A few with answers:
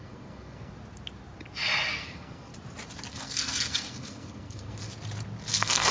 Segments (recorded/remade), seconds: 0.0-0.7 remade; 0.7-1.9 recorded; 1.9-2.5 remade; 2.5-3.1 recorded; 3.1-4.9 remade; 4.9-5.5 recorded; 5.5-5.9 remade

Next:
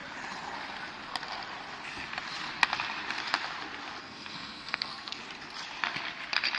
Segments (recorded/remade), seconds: 0.0-4.0 recorded; 4.0-5.2 remade; 5.2-6.6 recorded

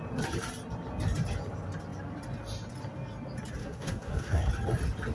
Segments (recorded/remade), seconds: 0.0-3.6 recorded; 3.6-4.5 remade; 4.5-5.1 recorded

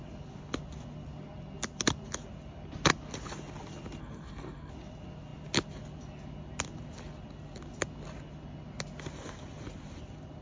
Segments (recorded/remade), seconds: 0.0-4.0 recorded; 4.0-4.7 remade; 4.7-10.4 recorded